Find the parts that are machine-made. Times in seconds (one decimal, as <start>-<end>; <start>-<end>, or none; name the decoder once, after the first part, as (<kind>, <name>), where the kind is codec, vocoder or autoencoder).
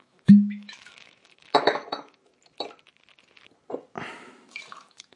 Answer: 0.0-2.3 (autoencoder, DAC-VAE); 4.1-5.2